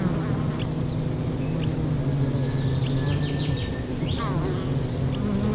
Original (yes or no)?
yes